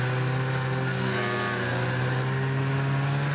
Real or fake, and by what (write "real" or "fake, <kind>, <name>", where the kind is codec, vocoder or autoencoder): real